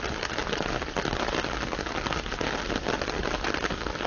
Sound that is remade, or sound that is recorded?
recorded